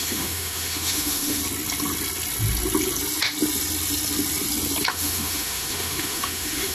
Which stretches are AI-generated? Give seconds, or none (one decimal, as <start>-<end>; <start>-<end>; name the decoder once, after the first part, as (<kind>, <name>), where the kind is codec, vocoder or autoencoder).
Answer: 0.0-1.4 (autoencoder, DAC-VAE); 4.9-6.7

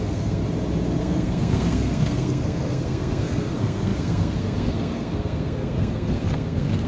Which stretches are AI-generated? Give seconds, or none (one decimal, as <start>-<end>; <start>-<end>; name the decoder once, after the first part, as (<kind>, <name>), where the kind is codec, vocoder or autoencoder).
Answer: 0.0-0.4 (codec, SNAC); 1.0-6.9

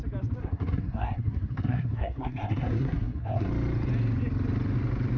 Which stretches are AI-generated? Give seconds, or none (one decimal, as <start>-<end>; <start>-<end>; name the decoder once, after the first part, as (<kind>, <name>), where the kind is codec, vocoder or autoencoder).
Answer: 0.4-3.5 (codec, SNAC)

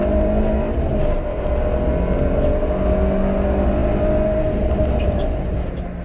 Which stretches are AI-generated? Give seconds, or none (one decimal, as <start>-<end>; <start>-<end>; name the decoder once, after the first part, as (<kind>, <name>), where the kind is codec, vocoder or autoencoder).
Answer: none

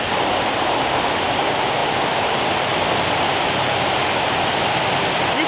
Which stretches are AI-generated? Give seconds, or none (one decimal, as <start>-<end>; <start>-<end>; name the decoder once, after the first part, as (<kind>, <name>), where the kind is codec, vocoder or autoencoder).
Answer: none